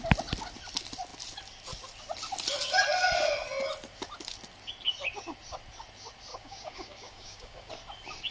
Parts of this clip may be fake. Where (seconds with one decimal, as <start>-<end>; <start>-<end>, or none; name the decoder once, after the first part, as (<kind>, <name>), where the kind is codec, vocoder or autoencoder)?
6.3-7.7 (codec, DAC)